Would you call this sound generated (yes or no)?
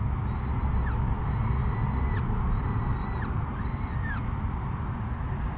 no